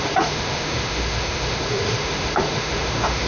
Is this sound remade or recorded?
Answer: remade